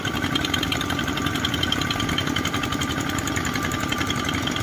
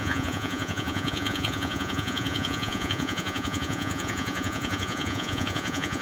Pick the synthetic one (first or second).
second